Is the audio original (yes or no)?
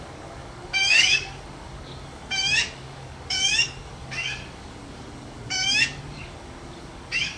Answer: no